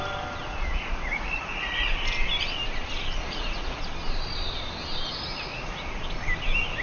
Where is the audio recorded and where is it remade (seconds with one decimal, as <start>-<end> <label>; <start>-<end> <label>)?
0.0-0.4 recorded; 0.4-1.9 remade; 1.9-3.2 recorded; 3.2-3.8 remade; 3.8-5.3 recorded; 5.3-6.0 remade; 6.0-6.8 recorded